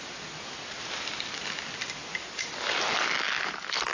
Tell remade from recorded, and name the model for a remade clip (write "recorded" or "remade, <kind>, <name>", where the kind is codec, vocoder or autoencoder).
recorded